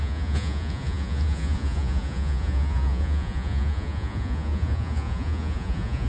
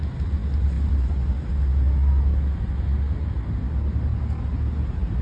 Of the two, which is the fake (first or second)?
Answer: first